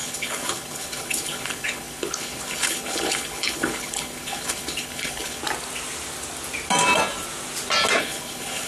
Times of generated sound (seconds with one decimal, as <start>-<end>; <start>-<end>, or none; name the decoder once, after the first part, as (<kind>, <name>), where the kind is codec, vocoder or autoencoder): 0.0-5.4 (codec, HILCodec); 8.0-8.7